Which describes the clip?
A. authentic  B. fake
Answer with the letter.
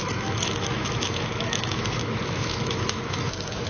B